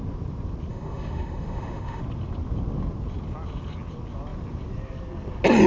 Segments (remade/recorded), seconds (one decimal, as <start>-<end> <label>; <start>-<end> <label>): 0.0-0.7 recorded; 0.7-2.0 remade; 2.0-5.7 recorded